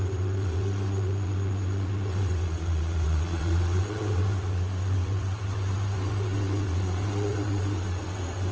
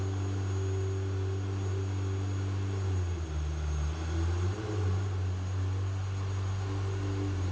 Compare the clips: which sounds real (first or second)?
second